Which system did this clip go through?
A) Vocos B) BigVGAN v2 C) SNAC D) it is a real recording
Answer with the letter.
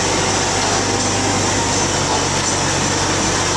D